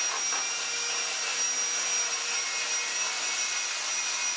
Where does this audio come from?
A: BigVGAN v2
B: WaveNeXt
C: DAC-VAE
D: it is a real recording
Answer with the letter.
D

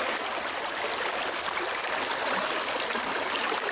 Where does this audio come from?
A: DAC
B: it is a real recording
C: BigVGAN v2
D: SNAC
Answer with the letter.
C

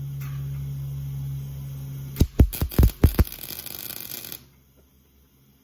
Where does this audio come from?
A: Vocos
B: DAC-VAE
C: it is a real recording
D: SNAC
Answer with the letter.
C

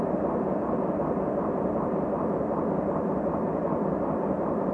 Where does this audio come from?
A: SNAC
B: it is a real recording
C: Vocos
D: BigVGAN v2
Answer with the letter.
B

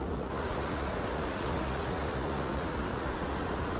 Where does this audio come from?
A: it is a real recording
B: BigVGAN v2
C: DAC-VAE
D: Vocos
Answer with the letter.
D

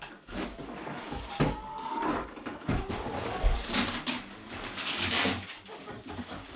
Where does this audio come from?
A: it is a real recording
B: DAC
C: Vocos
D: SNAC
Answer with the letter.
B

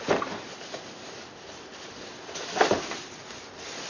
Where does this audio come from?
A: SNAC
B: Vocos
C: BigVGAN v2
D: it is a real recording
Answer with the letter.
D